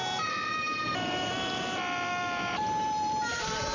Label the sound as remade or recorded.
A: remade